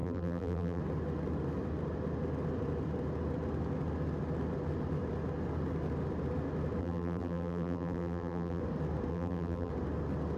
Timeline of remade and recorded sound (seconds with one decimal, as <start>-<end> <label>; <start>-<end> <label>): 0.0-0.8 remade; 0.8-6.8 recorded; 6.8-8.6 remade; 8.6-9.1 recorded; 9.1-9.7 remade; 9.7-10.4 recorded